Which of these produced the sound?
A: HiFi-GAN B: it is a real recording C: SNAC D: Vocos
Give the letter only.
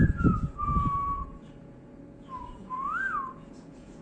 D